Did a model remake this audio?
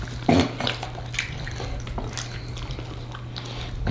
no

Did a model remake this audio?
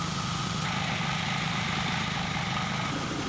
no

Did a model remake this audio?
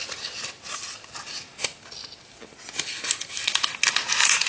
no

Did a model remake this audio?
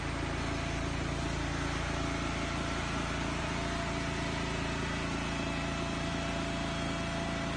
no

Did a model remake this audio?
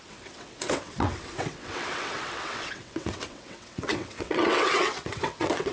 yes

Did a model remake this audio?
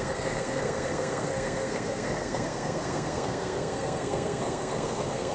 yes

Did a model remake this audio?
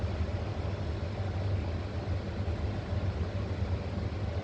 no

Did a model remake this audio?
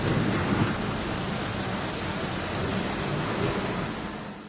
no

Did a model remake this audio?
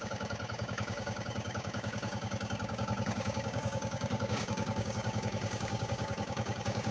yes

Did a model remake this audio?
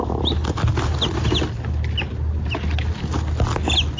no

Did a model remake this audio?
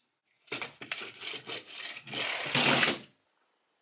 no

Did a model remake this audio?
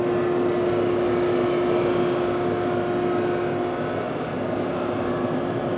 no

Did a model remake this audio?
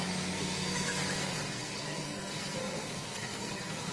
yes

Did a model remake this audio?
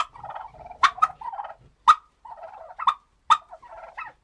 no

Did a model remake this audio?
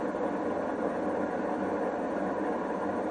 no